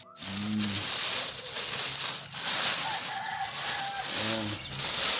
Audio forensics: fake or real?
real